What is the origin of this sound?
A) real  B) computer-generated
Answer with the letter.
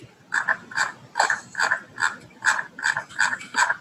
B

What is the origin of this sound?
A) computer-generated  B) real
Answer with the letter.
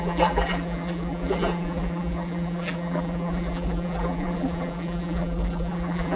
A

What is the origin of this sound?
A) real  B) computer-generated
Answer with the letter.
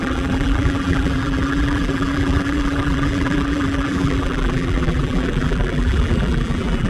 B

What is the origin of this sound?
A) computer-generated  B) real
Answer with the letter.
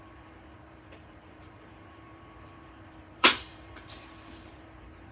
A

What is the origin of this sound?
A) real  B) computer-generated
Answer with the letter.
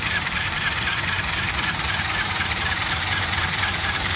B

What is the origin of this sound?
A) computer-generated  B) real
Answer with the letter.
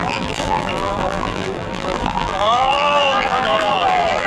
A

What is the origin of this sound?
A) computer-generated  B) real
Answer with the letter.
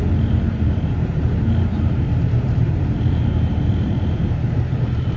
A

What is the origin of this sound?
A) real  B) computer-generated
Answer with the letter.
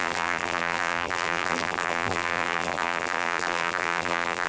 B